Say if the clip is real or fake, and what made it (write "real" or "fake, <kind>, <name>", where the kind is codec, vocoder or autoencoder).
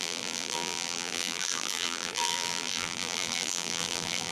fake, vocoder, BigVGAN v2